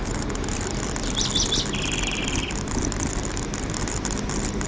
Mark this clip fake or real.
real